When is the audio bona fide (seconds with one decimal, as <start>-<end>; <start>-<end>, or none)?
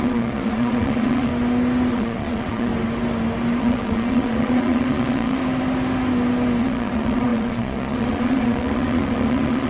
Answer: 1.3-1.9; 2.7-3.6; 5.4-6.6